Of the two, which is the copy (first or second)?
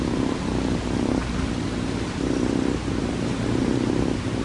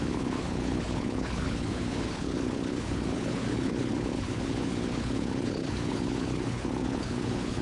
second